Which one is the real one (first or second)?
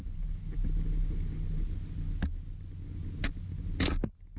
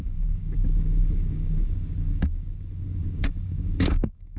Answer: first